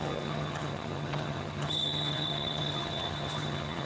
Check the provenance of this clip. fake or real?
fake